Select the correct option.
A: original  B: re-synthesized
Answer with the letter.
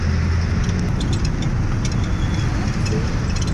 A